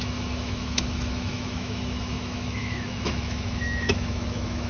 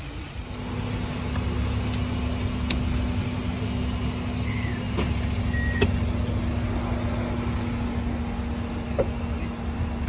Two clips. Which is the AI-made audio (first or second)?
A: first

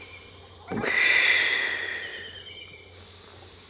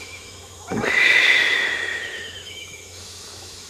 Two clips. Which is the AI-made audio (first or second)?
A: second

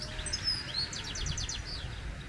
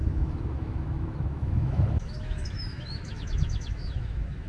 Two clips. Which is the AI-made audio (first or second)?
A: second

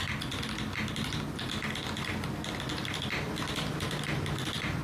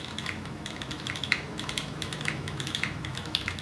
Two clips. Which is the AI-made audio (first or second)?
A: second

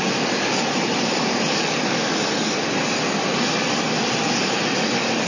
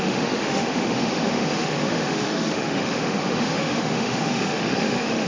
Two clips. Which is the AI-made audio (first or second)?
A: second